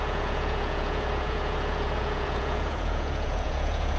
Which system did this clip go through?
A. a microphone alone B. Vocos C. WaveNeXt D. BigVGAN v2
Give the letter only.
B